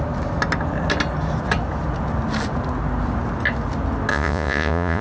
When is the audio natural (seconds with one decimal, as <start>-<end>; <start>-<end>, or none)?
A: 0.0-4.1